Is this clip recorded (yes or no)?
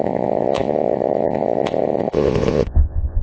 no